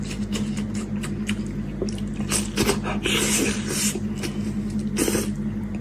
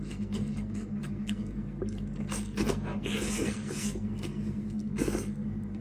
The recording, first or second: first